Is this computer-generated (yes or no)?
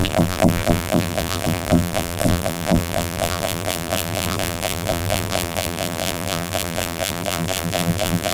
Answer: yes